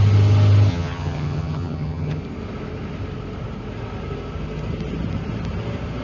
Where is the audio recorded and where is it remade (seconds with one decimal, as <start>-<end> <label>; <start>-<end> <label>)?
0.0-0.7 recorded; 0.7-2.2 remade; 2.2-6.0 recorded